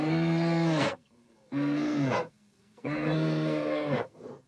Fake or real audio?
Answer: fake